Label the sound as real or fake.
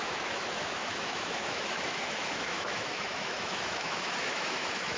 fake